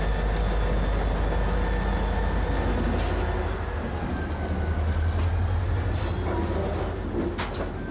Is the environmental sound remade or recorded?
recorded